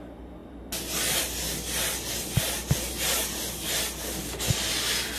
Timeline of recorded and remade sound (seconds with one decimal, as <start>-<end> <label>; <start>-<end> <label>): 0.0-5.2 recorded